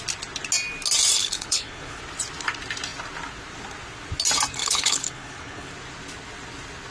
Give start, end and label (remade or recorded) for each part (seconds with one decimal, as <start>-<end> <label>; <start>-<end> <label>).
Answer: 0.0-1.2 recorded; 1.2-2.0 remade; 2.0-4.6 recorded; 4.6-5.7 remade; 5.7-6.9 recorded